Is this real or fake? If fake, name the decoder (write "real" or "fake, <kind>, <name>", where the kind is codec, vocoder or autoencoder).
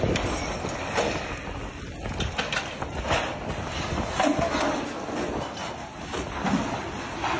real